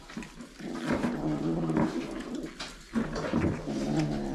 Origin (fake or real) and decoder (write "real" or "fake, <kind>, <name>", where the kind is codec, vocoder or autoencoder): real